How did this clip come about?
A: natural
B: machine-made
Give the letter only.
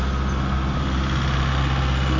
A